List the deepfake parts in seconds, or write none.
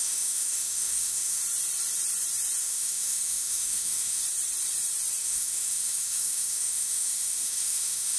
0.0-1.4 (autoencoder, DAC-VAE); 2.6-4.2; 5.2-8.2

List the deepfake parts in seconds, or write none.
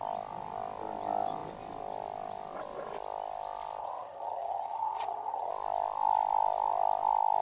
3.8-5.5 (vocoder, HiFi-GAN)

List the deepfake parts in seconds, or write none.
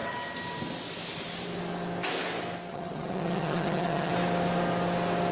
2.7-4.1 (vocoder, HiFi-GAN)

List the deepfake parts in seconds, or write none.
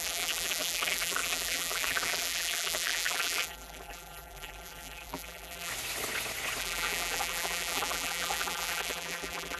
0.0-5.7 (vocoder, BigVGAN v2); 6.6-9.6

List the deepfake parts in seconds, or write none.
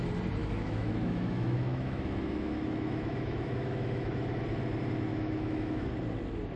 0.4-4.4 (autoencoder, DAC-VAE); 5.1-5.9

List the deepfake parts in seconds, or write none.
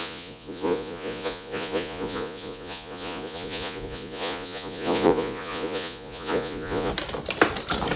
0.0-6.9 (vocoder, Vocos)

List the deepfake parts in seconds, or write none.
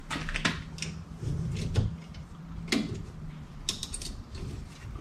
none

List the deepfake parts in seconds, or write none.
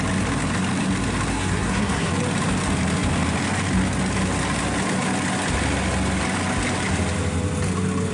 1.3-2.1 (codec, SNAC)